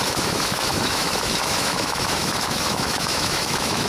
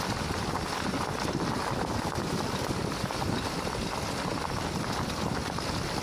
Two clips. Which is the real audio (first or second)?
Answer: second